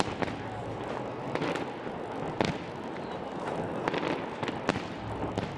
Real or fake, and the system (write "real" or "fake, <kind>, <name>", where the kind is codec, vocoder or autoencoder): real